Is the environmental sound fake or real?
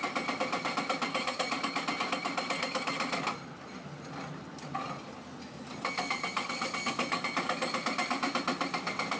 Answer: real